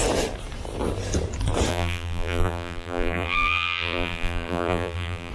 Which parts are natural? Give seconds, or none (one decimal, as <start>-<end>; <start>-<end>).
0.0-1.7